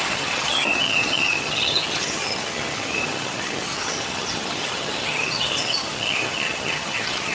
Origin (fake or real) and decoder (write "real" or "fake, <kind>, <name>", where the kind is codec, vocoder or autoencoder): fake, vocoder, HiFi-GAN